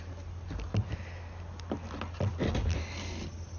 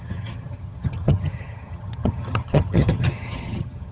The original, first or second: first